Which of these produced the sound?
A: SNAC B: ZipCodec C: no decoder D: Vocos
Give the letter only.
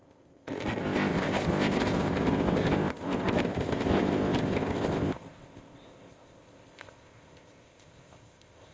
B